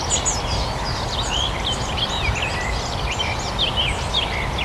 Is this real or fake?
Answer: real